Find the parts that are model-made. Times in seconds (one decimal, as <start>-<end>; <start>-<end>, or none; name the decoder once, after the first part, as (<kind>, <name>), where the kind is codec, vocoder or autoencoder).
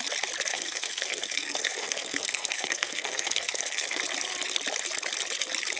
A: 0.5-4.0 (codec, SNAC)